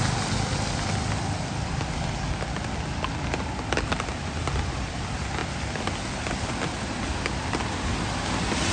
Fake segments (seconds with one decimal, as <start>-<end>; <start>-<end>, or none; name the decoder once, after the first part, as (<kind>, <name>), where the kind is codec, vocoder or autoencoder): none